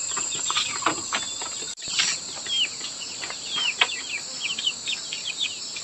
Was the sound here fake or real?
real